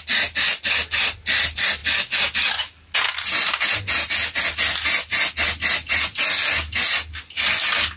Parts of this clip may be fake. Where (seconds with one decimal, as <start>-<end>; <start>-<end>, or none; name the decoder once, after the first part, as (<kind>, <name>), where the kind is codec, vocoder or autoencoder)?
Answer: none